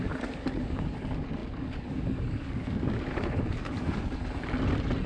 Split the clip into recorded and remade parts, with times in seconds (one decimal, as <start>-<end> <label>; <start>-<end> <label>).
0.0-4.2 remade; 4.2-5.1 recorded